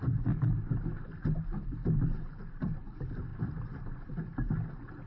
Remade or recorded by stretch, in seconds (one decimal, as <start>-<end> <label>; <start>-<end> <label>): 0.0-5.1 recorded